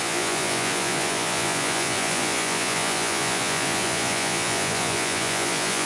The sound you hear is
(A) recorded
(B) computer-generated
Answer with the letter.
B